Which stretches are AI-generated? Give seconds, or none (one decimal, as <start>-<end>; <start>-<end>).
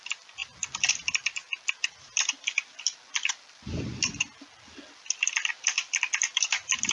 none